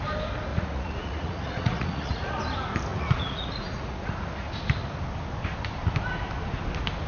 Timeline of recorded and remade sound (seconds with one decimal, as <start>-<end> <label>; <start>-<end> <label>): 0.0-0.5 recorded; 0.5-2.4 remade; 2.4-2.9 recorded; 2.9-4.1 remade; 4.1-7.1 recorded